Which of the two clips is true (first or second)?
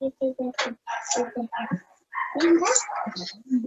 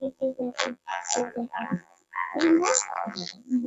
first